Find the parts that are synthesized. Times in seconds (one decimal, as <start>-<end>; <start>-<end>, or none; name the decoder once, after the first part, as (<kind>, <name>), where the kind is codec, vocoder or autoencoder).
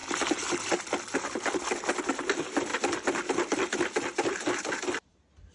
none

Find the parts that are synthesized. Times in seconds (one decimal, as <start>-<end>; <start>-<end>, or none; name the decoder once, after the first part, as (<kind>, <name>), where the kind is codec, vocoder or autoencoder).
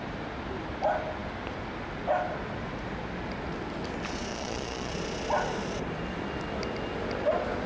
4.3-4.9 (vocoder, Vocos)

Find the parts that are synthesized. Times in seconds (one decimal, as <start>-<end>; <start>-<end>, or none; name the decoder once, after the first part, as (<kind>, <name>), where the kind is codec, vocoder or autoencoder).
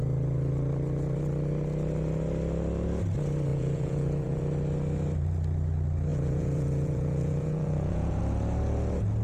3.5-4.4 (vocoder, Vocos); 6.1-8.2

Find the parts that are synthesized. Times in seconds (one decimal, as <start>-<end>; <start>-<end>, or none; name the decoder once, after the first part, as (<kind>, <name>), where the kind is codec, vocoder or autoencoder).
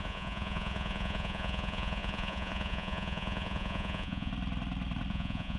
0.0-4.3 (vocoder, Vocos); 5.1-5.6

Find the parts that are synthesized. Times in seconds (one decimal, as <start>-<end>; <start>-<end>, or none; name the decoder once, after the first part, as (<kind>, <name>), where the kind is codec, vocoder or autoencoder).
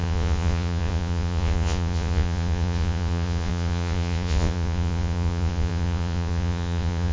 0.0-7.1 (vocoder, Vocos)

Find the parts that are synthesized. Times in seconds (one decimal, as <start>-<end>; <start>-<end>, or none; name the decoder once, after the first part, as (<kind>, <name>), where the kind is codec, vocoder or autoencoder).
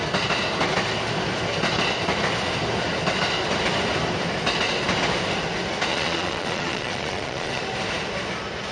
5.9-7.6 (vocoder, Vocos)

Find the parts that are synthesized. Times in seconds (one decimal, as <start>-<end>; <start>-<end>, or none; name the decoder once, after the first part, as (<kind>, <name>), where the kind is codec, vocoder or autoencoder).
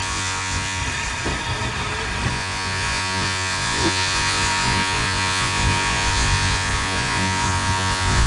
0.0-0.8 (vocoder, Vocos); 2.3-8.3